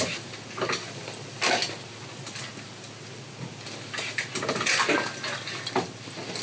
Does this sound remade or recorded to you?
recorded